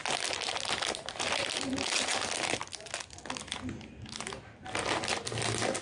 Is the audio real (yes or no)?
yes